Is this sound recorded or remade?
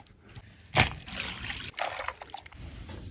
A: recorded